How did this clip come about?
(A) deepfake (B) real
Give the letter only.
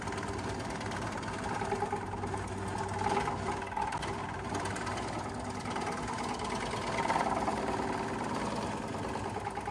B